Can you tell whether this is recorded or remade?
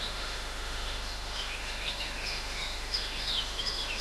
remade